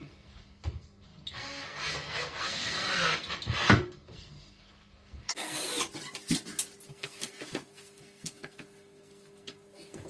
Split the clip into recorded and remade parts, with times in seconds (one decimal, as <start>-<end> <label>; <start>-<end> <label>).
0.0-5.7 remade; 5.7-6.9 recorded; 6.9-10.1 remade